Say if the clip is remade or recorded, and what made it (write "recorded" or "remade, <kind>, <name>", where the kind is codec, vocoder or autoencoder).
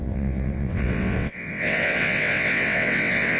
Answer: remade, vocoder, WaveNeXt